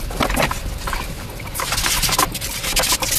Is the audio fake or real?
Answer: real